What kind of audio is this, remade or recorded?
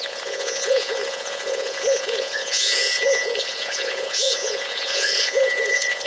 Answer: remade